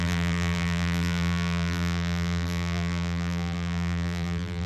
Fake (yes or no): yes